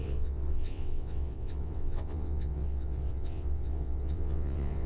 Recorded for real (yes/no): no